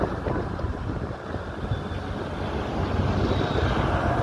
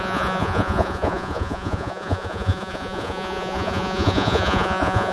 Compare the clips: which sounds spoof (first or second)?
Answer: second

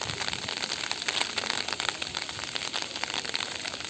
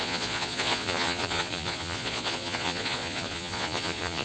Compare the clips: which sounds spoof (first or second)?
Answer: second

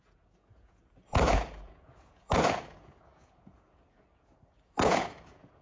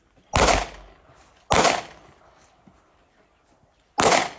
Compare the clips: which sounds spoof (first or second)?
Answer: first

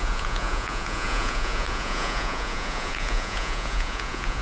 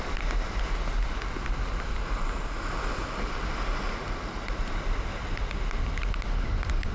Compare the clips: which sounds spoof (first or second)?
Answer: first